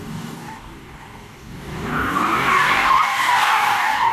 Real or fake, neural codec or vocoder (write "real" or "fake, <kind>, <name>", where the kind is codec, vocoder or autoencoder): fake, codec, DAC